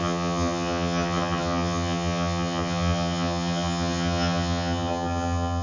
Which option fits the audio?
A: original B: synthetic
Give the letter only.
B